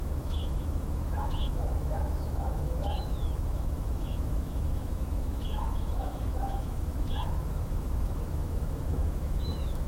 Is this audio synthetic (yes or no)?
yes